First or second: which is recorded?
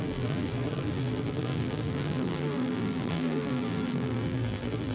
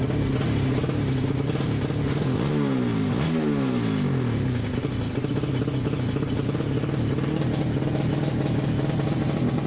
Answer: second